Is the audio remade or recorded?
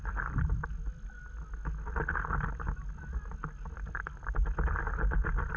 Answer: recorded